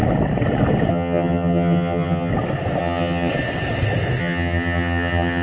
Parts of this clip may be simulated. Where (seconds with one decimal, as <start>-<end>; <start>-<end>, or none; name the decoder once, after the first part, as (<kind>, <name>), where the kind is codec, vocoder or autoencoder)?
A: 0.9-2.3 (vocoder, HiFi-GAN); 2.8-3.3; 4.2-5.4